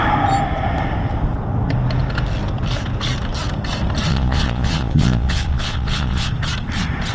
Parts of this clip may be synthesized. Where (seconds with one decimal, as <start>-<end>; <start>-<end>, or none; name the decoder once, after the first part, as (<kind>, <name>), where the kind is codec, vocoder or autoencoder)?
4.1-6.3 (vocoder, Vocos)